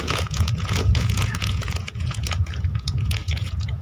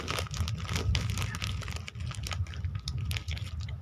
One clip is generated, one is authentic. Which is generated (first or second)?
first